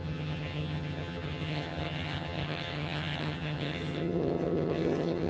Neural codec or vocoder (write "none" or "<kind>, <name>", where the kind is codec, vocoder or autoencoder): vocoder, HiFi-GAN